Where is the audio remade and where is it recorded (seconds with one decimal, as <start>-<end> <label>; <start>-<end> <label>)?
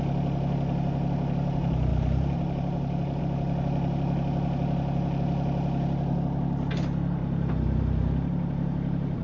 0.0-1.9 recorded; 1.9-3.2 remade; 3.2-7.2 recorded; 7.2-9.2 remade